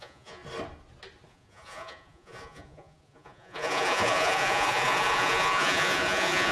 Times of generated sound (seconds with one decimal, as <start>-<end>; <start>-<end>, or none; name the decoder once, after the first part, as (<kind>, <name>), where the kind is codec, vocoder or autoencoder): 0.0-0.4 (vocoder, Vocos); 1.3-6.5